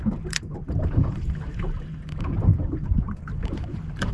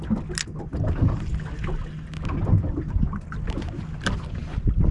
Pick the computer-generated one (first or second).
first